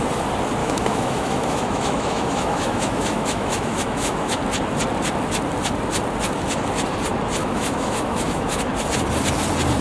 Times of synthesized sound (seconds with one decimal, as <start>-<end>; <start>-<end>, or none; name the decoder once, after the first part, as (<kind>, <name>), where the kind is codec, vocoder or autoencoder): 0.6-4.4 (autoencoder, DAC-VAE); 7.4-8.7